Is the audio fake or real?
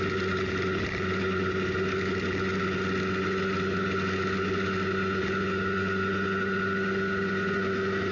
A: real